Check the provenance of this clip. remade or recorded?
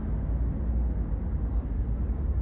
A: recorded